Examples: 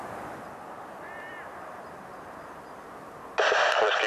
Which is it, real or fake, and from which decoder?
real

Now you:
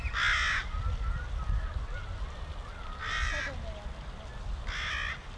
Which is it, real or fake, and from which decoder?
real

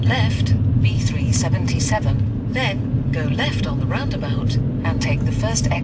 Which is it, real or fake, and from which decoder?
real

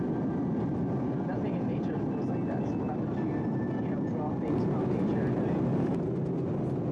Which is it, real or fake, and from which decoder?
real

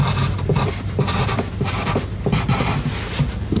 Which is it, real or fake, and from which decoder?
real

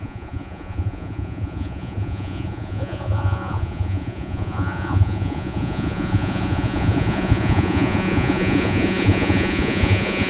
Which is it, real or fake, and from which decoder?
fake, vocoder, Vocos